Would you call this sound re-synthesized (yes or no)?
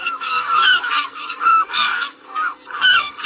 yes